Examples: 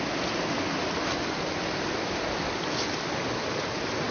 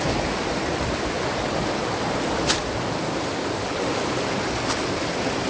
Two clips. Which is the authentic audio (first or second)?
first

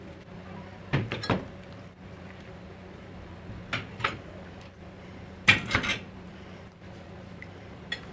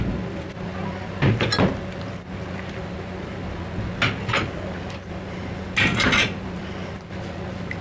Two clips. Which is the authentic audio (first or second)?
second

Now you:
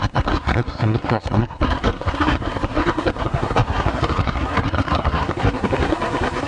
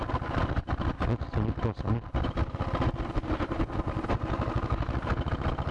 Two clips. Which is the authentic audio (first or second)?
second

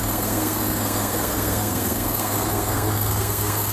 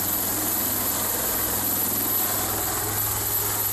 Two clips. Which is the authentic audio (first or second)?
second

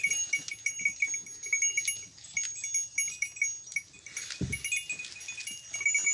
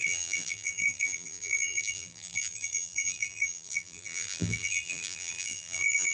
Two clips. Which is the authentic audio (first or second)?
first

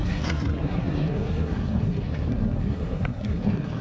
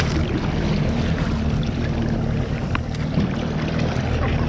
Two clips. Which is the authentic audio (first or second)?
second